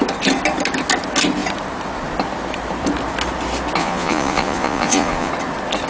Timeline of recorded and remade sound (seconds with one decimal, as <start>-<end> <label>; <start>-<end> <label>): 0.0-3.8 recorded; 3.8-5.3 remade; 5.3-5.9 recorded